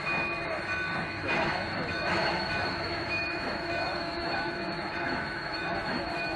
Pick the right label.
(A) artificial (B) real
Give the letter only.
A